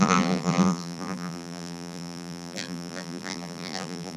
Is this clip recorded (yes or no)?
no